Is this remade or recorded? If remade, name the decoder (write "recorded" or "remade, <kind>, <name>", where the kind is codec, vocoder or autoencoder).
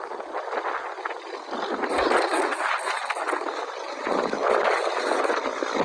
recorded